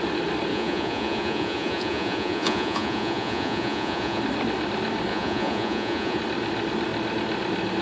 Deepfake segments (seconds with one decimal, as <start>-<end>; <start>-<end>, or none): 0.5-4.2; 5.1-6.2